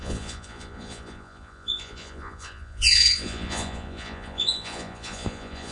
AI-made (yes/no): yes